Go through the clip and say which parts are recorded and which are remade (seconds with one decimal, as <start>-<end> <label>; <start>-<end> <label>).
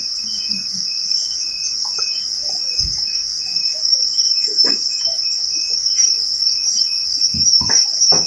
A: 0.0-8.3 remade